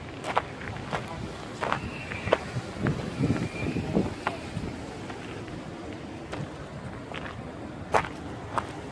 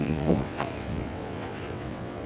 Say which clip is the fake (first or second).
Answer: second